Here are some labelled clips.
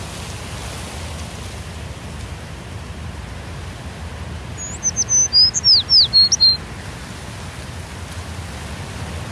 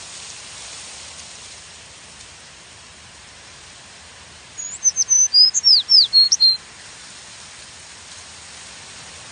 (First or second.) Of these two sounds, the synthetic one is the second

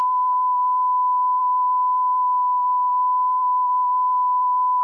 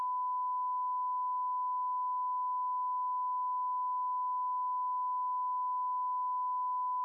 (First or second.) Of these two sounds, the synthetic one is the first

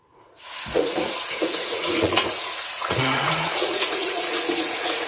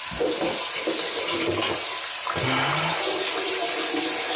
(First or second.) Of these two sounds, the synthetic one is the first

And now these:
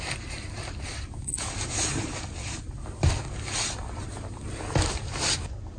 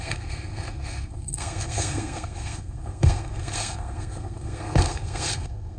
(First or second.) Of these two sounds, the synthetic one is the second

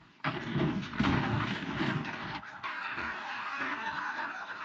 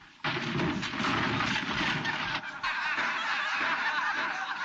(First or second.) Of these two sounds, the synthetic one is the first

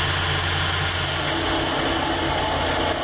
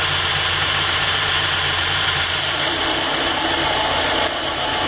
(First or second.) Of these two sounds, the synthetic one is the second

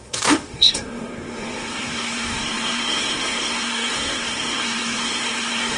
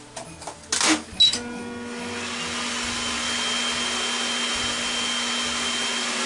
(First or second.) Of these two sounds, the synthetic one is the first